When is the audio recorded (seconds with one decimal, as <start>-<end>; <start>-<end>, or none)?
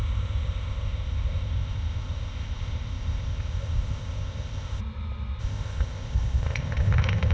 4.8-5.4